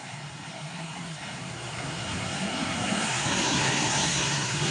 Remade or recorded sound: remade